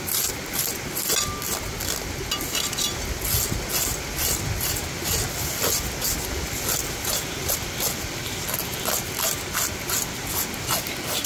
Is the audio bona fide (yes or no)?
yes